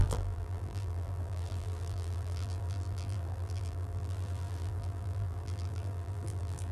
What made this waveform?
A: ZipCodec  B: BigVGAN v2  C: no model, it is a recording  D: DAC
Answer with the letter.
B